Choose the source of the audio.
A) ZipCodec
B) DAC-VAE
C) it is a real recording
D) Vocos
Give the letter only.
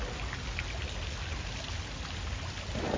C